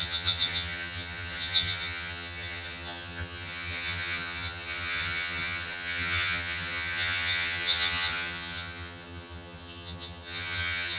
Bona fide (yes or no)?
no